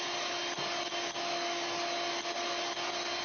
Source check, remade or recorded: recorded